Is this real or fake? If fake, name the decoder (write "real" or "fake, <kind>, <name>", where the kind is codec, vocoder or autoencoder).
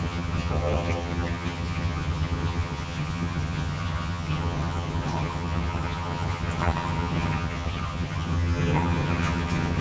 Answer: fake, vocoder, HiFi-GAN